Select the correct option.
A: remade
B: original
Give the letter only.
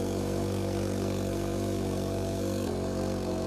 A